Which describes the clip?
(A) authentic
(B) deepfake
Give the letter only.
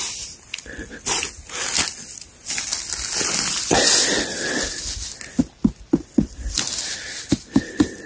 A